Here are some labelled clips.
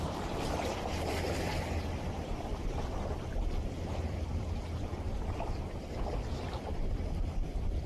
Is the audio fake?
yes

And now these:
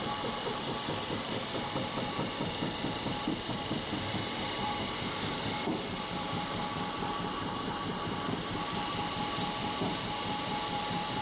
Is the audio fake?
yes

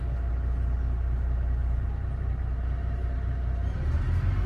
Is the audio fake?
no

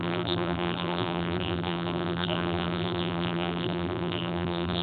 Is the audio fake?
yes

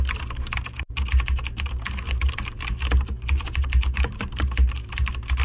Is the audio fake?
yes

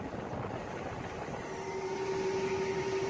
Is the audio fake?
yes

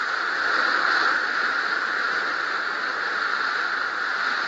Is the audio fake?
no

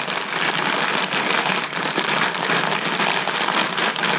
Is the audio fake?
no